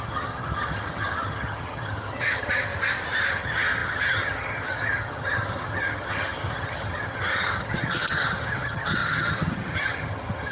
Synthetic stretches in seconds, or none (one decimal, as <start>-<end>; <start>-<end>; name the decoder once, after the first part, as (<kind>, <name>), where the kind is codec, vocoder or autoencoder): 0.0-2.7 (vocoder, HiFi-GAN); 3.3-10.5